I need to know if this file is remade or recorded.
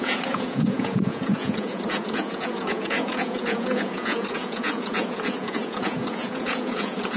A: remade